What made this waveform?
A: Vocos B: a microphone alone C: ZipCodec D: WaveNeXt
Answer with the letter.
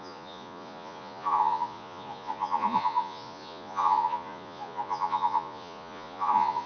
A